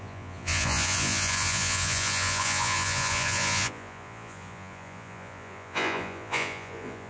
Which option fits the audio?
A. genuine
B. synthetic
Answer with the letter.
B